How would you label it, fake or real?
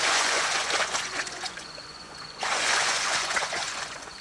fake